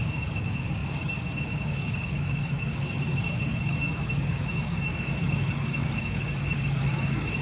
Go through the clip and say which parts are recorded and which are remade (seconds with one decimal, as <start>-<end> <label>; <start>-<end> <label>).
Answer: 0.0-7.4 remade